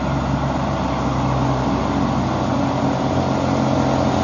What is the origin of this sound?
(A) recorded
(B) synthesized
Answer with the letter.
A